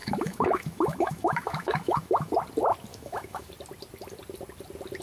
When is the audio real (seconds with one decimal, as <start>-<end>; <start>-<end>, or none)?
2.3-2.9; 3.5-5.0